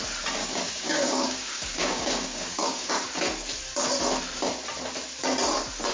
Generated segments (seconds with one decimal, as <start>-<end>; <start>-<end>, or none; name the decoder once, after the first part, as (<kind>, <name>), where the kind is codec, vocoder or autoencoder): 0.4-2.9 (codec, DAC)